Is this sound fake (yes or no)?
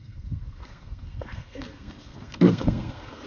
yes